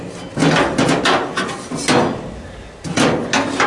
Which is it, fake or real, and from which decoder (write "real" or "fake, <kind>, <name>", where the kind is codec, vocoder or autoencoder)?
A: real